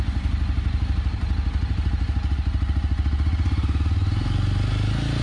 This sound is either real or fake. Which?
real